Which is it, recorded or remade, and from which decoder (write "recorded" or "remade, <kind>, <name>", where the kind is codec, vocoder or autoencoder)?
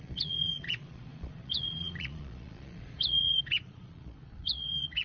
remade, vocoder, Vocos